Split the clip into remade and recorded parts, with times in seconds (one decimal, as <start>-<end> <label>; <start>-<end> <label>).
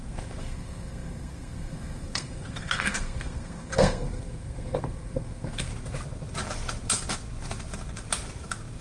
0.0-5.7 remade; 5.7-8.8 recorded